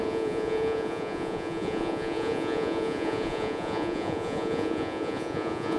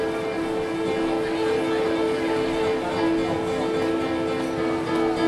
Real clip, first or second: second